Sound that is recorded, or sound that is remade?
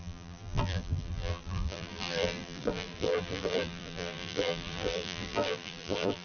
remade